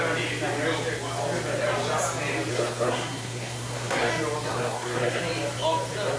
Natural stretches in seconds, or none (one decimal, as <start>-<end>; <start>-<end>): 0.0-2.5; 4.1-4.5; 5.2-6.2